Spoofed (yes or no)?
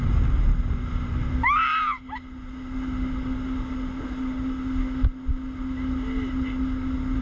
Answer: no